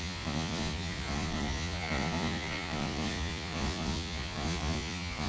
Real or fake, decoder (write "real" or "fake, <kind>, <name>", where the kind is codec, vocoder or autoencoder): fake, vocoder, Vocos